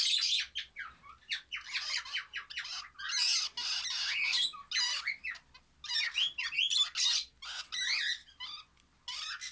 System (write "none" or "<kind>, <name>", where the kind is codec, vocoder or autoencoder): none